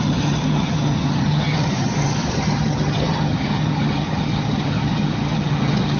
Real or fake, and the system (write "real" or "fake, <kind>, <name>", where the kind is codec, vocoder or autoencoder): fake, vocoder, HiFi-GAN